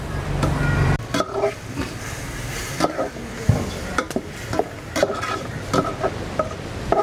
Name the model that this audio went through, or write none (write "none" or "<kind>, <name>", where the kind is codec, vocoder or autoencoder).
vocoder, BigVGAN v2